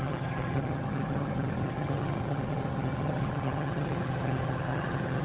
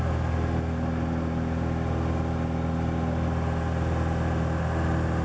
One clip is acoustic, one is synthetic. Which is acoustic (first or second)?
second